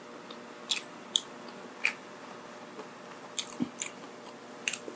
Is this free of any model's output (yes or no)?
yes